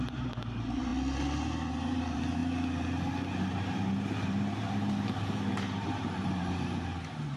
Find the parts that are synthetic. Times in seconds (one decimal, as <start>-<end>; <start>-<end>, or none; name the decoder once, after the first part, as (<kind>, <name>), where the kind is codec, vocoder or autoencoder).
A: 0.0-0.9 (vocoder, BigVGAN v2); 1.7-2.4; 3.5-7.4